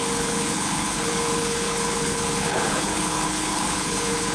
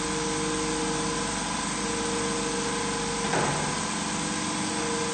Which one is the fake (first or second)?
first